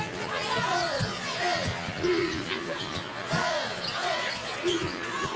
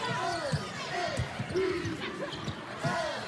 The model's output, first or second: first